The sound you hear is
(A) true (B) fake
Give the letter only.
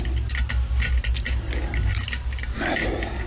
A